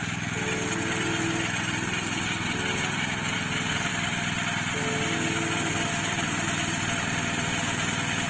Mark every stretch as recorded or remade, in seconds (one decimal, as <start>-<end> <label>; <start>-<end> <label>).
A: 0.0-8.3 recorded